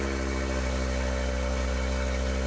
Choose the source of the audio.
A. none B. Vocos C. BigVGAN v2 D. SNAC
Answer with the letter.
A